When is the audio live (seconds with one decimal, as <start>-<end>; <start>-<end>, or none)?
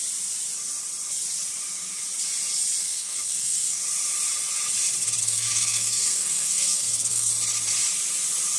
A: 0.0-2.8; 3.8-5.2; 7.3-8.6